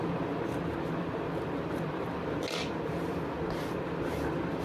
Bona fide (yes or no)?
yes